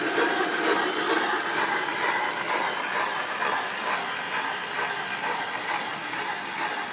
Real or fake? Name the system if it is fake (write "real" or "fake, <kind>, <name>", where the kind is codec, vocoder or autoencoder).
fake, vocoder, BigVGAN v2